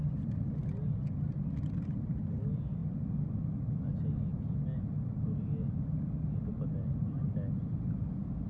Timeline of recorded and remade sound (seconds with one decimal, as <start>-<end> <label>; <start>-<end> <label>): 0.0-8.5 recorded

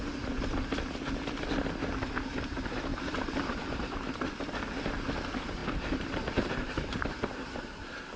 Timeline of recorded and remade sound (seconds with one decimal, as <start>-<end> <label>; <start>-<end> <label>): 0.0-2.9 recorded; 2.9-4.3 remade; 4.3-5.6 recorded; 5.6-8.2 remade

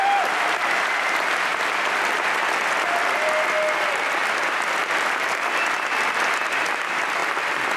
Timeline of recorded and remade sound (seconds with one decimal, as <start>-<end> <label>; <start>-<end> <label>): 0.0-7.8 recorded

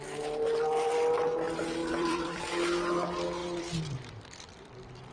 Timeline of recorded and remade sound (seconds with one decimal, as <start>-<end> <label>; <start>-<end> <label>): 0.0-1.8 recorded; 1.8-2.4 remade; 2.4-3.4 recorded; 3.4-5.1 remade

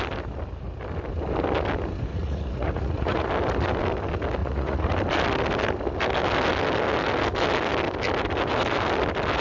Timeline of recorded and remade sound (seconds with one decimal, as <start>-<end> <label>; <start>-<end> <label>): 0.0-2.1 recorded; 2.1-3.3 remade; 3.3-4.4 recorded; 4.4-4.9 remade; 4.9-9.4 recorded

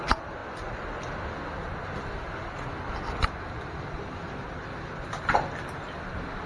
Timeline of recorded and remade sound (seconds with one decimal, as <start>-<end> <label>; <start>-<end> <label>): 0.0-6.5 recorded

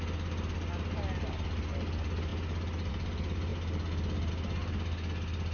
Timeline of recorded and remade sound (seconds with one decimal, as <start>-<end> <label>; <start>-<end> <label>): 0.0-5.5 recorded